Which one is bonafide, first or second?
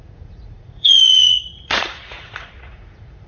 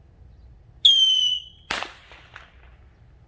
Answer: second